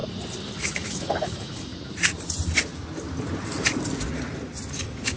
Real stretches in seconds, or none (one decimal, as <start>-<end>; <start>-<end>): 0.0-0.6; 1.7-4.8

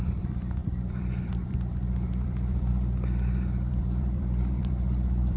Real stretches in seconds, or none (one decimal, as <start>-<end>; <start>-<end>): none

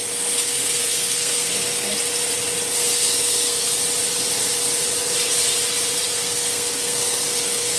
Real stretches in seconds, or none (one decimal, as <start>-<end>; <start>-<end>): 1.9-2.7; 3.7-6.1